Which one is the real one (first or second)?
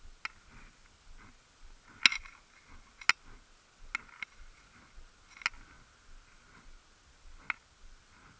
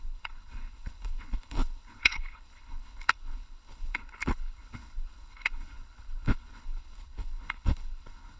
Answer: first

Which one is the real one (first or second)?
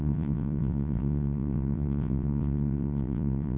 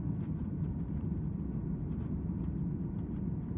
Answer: second